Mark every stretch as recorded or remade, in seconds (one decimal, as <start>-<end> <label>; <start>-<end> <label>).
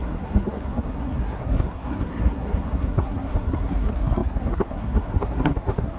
0.0-6.0 remade